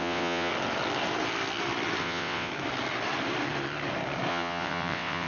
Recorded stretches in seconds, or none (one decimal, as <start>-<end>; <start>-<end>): 0.5-2.0; 2.5-4.3